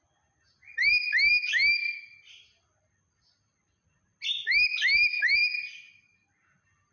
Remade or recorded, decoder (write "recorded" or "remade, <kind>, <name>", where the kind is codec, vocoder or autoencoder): recorded